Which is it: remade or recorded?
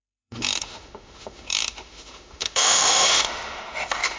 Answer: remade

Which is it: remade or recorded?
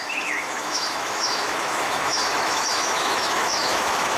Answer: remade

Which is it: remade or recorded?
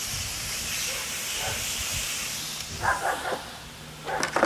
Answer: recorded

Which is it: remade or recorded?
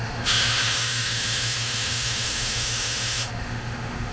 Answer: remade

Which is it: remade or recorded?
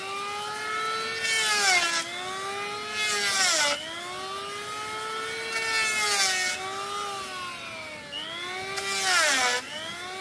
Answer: recorded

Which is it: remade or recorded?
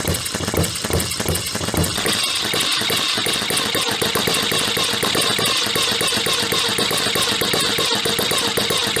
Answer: recorded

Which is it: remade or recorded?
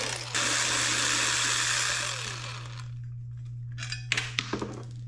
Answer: recorded